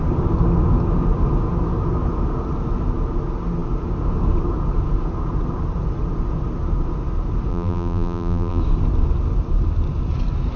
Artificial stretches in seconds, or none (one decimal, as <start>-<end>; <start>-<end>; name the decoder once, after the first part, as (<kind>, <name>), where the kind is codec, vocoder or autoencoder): 7.5-8.6 (vocoder, BigVGAN v2)